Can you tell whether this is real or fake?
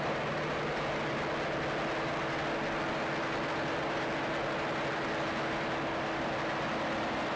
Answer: real